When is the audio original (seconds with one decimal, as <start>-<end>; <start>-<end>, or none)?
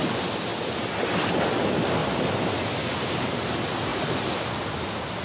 0.0-5.2